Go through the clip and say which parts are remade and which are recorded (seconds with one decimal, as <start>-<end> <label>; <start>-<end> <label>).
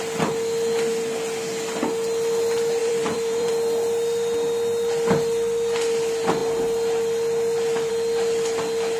0.0-2.8 recorded; 2.8-3.5 remade; 3.5-9.0 recorded